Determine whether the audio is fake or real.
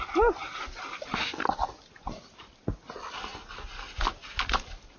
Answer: real